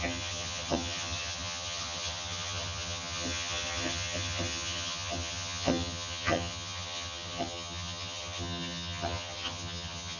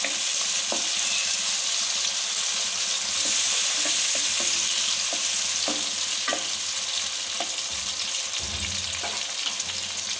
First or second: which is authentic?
second